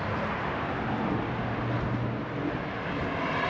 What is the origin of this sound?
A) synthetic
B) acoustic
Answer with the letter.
B